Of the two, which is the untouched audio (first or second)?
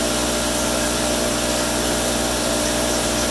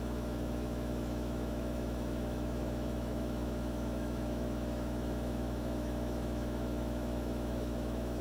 first